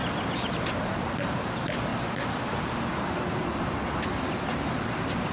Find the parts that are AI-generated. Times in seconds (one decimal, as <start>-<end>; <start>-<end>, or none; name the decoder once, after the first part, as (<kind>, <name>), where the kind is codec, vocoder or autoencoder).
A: 0.9-1.9 (vocoder, BigVGAN v2)